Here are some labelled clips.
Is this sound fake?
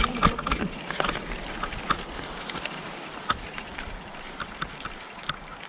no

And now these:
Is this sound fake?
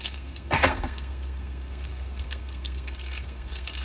yes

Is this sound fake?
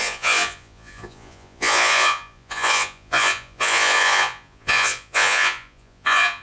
yes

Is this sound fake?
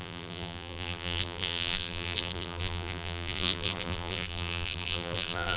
yes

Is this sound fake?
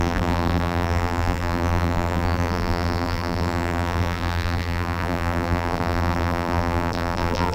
yes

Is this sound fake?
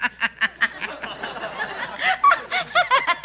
no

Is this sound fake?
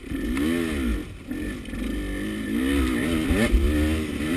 no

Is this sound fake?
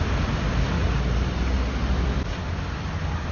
no